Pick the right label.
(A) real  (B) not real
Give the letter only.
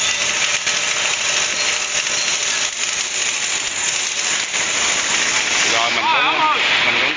A